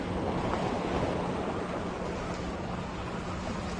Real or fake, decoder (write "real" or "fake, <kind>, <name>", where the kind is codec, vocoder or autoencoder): real